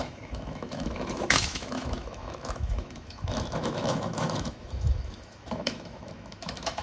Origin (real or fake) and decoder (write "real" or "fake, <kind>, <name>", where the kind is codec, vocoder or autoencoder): fake, autoencoder, DAC-VAE